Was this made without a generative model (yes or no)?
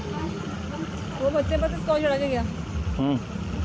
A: yes